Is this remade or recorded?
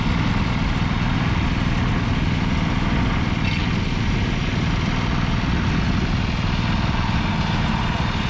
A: recorded